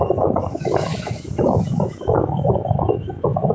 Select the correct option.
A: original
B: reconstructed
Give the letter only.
B